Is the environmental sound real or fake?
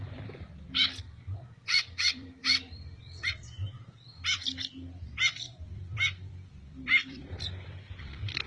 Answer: fake